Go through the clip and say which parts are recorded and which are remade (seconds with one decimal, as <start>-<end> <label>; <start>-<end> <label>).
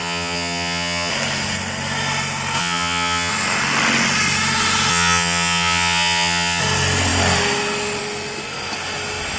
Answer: 0.0-1.1 remade; 1.1-2.6 recorded; 2.6-3.3 remade; 3.3-4.9 recorded; 4.9-6.6 remade; 6.6-9.4 recorded